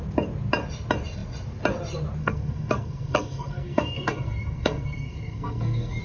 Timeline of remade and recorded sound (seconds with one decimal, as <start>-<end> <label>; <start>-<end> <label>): 0.0-2.2 recorded; 2.2-6.0 remade